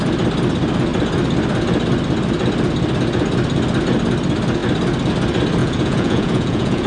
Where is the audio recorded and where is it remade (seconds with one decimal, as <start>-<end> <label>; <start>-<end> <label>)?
0.0-5.6 recorded; 5.6-6.9 remade